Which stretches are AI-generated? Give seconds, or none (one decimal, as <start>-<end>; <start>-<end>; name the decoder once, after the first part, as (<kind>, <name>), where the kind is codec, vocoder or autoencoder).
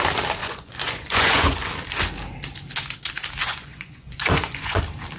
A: 0.4-1.7 (vocoder, Vocos); 3.4-4.8